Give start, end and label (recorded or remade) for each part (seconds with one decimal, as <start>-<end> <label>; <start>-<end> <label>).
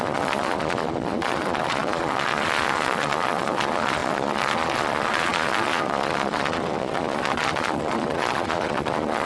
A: 0.0-9.3 remade